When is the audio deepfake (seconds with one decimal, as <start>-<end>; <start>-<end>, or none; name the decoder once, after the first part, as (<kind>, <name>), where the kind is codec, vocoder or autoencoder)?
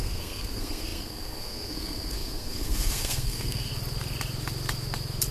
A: 0.0-3.7 (codec, SNAC)